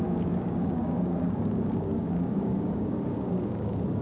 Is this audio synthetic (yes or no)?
yes